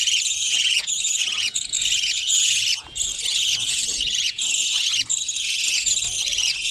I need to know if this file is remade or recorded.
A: remade